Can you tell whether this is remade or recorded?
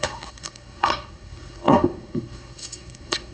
remade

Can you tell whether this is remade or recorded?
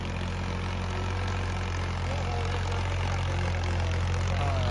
recorded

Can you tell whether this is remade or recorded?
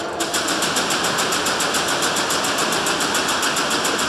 recorded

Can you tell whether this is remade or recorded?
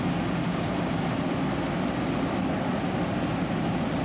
recorded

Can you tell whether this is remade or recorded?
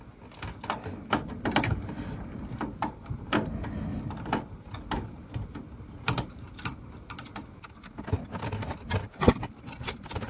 recorded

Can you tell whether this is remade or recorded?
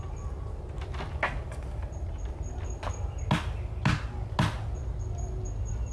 recorded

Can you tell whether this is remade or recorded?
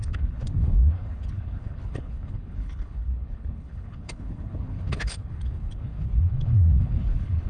remade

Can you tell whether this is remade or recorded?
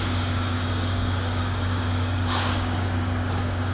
remade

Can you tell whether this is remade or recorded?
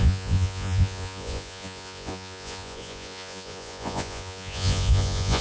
remade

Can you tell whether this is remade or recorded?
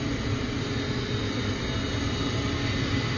recorded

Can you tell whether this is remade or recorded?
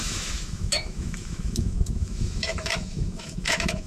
remade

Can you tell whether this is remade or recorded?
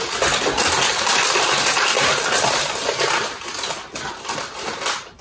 recorded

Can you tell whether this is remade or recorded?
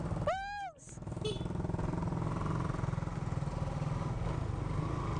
recorded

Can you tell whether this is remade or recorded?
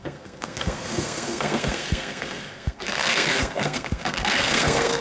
remade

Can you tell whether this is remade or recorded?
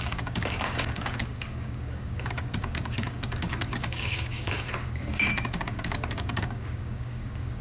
remade